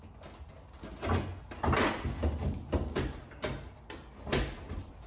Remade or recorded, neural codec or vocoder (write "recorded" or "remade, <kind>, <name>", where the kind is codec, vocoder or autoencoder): recorded